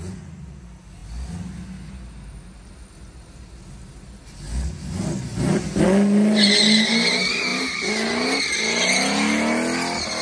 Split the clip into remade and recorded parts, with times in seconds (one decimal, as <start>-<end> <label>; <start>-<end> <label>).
0.0-10.2 recorded